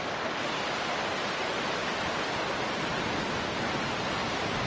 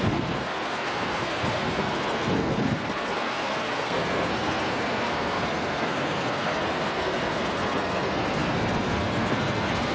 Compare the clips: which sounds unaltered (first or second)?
first